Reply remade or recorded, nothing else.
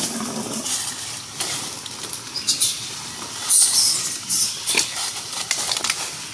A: recorded